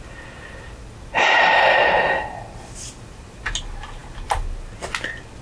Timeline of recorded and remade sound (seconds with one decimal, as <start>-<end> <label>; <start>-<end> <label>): 0.0-5.4 recorded